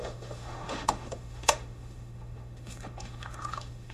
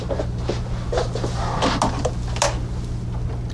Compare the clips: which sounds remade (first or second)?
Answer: first